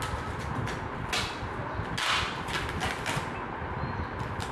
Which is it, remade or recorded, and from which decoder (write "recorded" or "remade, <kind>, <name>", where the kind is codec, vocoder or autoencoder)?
recorded